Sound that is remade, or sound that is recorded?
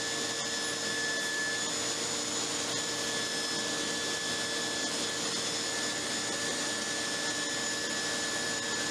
recorded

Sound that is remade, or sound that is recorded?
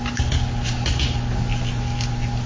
recorded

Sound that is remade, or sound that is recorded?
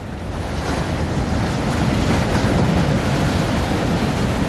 recorded